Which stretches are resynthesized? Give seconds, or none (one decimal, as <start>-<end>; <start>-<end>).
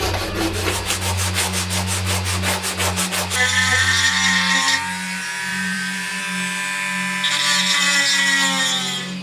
5.5-6.2